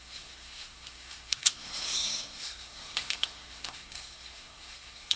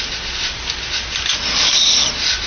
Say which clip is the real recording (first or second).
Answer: second